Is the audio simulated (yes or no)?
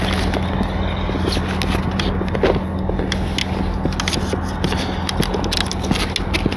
no